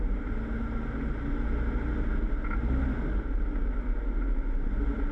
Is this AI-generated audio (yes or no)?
no